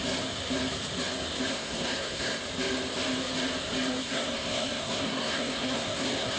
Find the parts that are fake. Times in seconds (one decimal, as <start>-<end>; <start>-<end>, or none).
1.5-2.4; 4.0-6.4